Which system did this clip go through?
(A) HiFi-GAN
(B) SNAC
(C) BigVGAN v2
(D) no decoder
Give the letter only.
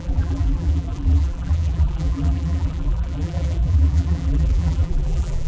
C